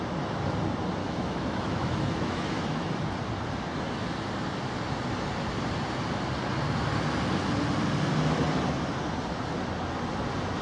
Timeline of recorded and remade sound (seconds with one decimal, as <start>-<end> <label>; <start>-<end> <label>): 0.0-1.0 recorded; 1.0-2.9 remade; 2.9-10.6 recorded